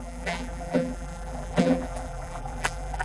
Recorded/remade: remade